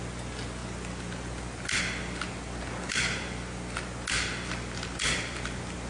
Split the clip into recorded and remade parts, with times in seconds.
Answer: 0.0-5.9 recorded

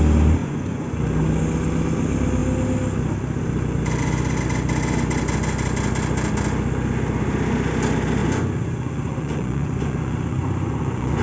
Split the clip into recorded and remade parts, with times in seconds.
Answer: 0.0-0.4 recorded; 0.4-1.0 remade; 1.0-8.2 recorded; 8.2-11.2 remade

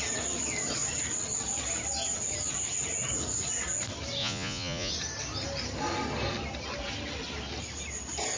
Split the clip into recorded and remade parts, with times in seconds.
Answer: 0.0-4.2 recorded; 4.2-4.9 remade; 4.9-8.4 recorded

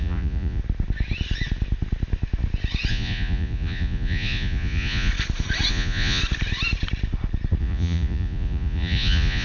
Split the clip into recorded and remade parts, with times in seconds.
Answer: 0.0-0.6 remade; 0.6-2.9 recorded; 2.9-5.1 remade; 5.1-5.7 recorded; 5.7-6.2 remade; 6.2-7.6 recorded; 7.6-9.4 remade

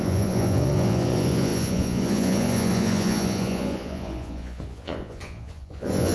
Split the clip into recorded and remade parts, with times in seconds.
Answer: 0.0-6.1 remade

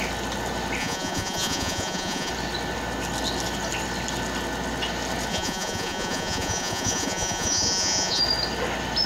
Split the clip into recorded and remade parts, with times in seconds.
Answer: 0.0-0.8 recorded; 0.8-2.3 remade; 2.3-5.3 recorded; 5.3-8.2 remade; 8.2-9.1 recorded

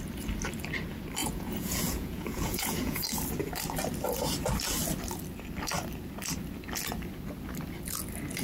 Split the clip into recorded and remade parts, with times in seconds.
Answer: 0.0-1.2 recorded; 1.2-3.0 remade; 3.0-8.4 recorded